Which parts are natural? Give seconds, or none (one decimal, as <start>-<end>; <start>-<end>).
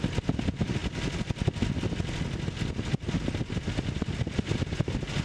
0.0-5.2